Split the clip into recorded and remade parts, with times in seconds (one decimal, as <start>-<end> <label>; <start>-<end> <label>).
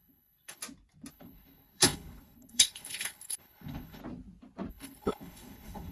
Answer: 0.0-0.6 remade; 0.6-1.1 recorded; 1.1-4.0 remade; 4.0-4.7 recorded; 4.7-5.9 remade